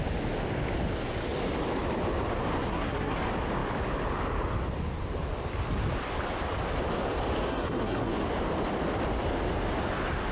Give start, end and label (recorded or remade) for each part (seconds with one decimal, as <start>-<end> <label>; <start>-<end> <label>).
0.0-2.6 recorded; 2.6-3.2 remade; 3.2-7.5 recorded; 7.5-8.1 remade; 8.1-10.3 recorded

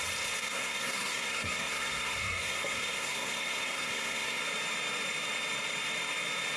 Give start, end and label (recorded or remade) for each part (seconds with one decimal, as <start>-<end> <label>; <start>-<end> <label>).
0.0-0.4 recorded; 0.4-4.4 remade; 4.4-6.6 recorded

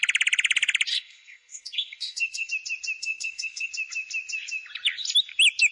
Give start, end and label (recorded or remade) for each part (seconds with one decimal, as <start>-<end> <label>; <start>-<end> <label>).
0.0-0.9 recorded; 0.9-2.5 remade; 2.5-3.0 recorded; 3.0-3.7 remade; 3.7-5.7 recorded

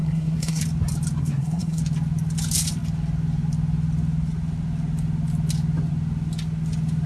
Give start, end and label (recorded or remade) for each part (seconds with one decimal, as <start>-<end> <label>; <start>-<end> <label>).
0.0-0.6 remade; 0.6-1.2 recorded; 1.2-1.8 remade; 1.8-7.1 recorded

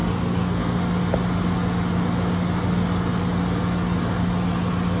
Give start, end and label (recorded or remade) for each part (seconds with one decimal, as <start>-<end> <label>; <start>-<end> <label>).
0.0-0.8 remade; 0.8-5.0 recorded

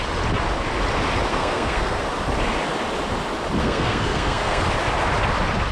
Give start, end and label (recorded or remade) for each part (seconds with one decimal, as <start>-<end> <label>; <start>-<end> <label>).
0.0-1.3 recorded; 1.3-2.0 remade; 2.0-3.6 recorded; 3.6-4.6 remade; 4.6-5.7 recorded

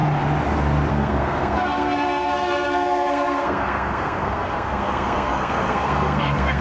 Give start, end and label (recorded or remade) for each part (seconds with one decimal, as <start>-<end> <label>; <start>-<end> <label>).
0.0-0.9 recorded; 0.9-6.6 remade